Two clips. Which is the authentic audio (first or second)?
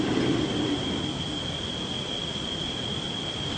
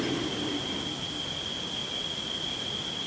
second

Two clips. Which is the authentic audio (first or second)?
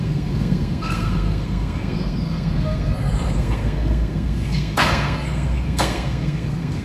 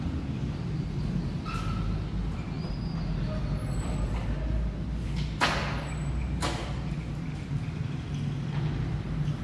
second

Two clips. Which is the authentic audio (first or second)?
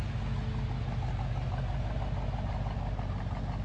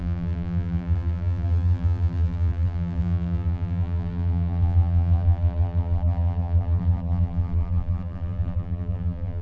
first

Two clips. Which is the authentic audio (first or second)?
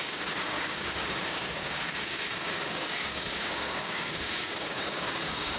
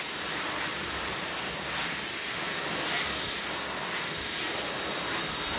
second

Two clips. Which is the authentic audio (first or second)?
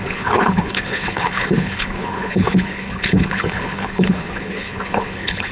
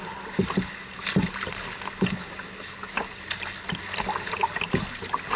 second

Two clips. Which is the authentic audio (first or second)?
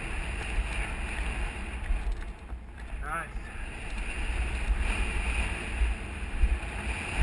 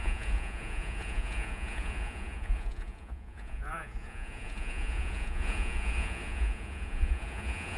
first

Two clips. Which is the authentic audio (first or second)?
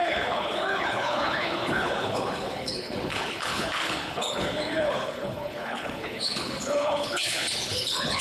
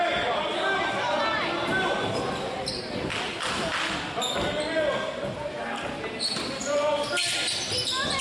second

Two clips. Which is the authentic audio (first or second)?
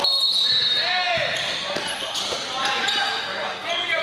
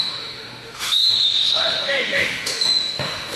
first